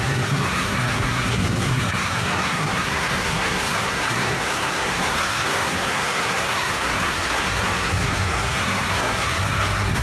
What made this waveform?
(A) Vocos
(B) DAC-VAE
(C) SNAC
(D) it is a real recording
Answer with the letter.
C